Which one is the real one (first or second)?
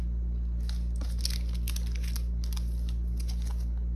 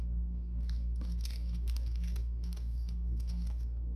first